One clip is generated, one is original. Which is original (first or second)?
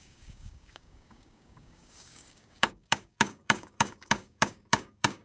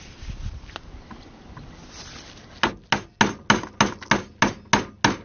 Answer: second